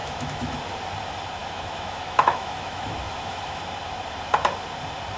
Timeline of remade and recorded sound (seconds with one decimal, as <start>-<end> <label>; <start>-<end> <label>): 0.0-0.6 remade; 0.6-1.4 recorded; 1.4-3.6 remade; 3.6-5.2 recorded